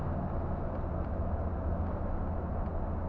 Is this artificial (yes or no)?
no